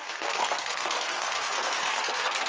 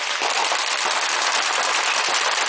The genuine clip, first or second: second